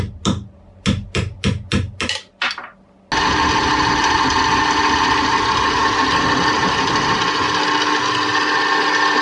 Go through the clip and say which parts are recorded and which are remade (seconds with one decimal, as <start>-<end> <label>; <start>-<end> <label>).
0.0-9.2 recorded